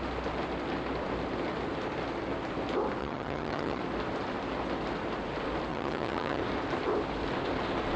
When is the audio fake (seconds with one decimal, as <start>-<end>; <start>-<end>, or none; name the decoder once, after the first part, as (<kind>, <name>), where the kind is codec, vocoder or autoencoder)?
3.0-3.8 (vocoder, HiFi-GAN); 5.7-6.4